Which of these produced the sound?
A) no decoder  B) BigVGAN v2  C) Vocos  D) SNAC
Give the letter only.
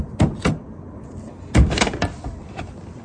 A